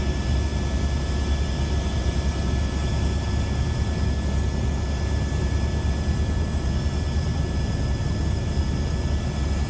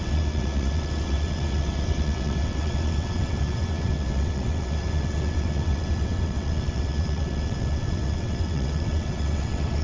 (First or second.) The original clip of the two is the first